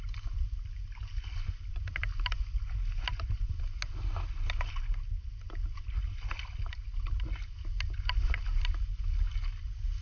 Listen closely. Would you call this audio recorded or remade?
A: recorded